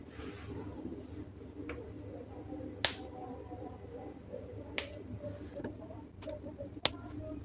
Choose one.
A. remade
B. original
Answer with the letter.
B